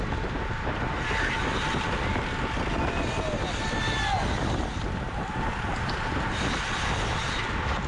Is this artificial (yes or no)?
no